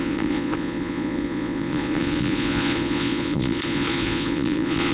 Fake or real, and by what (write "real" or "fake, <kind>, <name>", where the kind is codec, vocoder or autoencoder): fake, vocoder, Vocos